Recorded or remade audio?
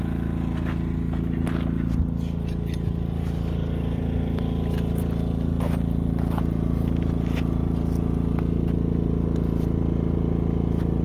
recorded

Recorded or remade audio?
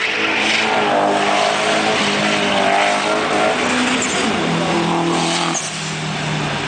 recorded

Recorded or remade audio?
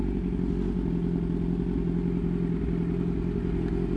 recorded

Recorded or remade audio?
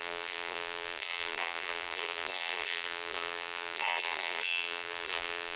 remade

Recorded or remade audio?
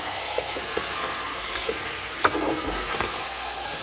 remade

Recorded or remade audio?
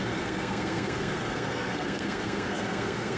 remade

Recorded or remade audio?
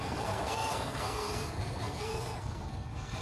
remade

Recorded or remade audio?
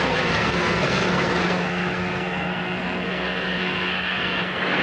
remade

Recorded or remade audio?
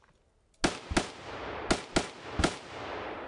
recorded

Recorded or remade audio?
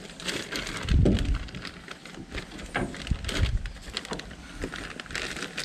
recorded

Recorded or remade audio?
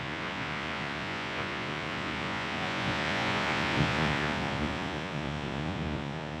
remade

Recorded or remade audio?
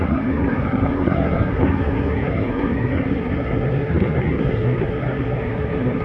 remade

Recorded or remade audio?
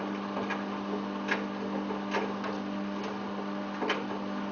recorded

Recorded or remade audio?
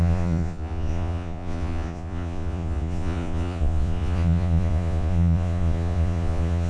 remade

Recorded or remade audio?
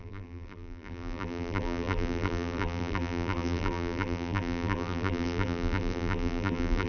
remade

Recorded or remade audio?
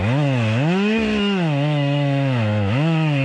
remade